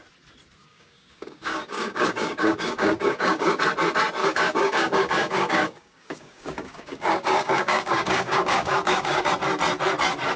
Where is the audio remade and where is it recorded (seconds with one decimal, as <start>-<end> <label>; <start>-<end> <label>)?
0.0-0.6 recorded; 0.6-3.6 remade; 3.6-4.2 recorded; 4.2-9.3 remade; 9.3-10.4 recorded